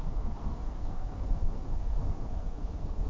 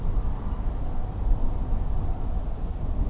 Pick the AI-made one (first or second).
first